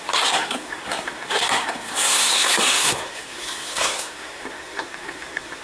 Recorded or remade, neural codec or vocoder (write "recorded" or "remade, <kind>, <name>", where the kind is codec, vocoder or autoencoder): remade, codec, SNAC